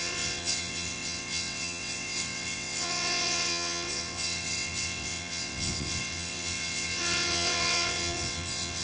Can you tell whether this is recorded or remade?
remade